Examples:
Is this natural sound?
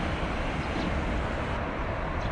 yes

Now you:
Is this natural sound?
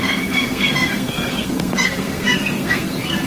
no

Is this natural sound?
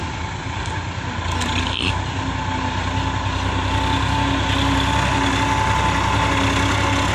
yes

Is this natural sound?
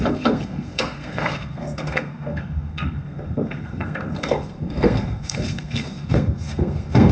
no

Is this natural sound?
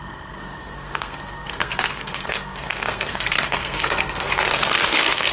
no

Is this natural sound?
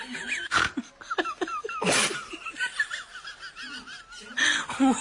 yes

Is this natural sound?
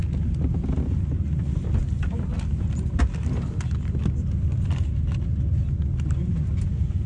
yes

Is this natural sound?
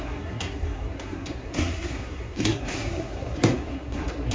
no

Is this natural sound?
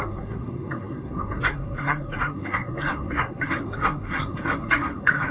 no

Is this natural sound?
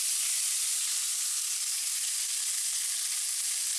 yes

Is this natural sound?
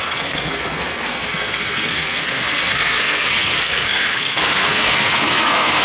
no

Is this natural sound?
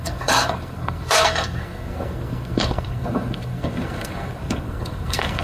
no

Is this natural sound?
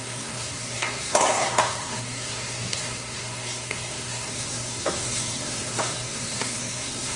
no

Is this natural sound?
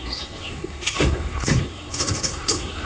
no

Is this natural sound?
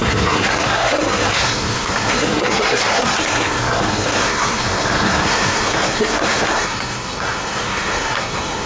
no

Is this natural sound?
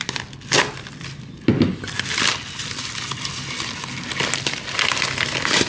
yes